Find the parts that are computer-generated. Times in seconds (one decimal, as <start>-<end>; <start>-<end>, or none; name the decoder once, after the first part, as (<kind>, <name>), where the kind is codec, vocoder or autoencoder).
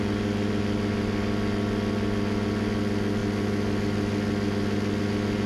none